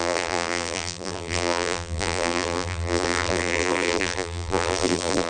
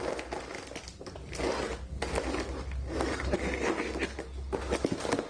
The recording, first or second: second